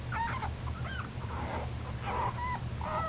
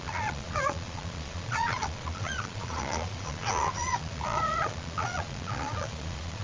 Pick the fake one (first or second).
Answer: second